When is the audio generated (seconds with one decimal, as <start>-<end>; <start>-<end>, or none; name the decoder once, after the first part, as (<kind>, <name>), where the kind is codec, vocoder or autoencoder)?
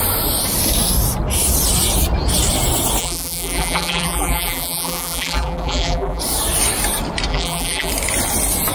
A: 3.0-6.2 (vocoder, BigVGAN v2); 7.3-7.9